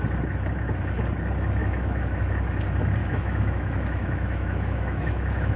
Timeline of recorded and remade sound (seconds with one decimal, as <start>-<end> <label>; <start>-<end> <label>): 0.0-1.6 recorded; 1.6-2.2 remade; 2.2-3.0 recorded; 3.0-5.6 remade